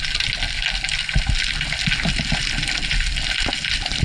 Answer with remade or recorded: recorded